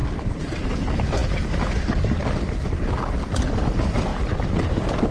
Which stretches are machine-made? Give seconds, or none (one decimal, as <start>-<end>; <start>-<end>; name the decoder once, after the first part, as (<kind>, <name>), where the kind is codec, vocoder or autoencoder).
none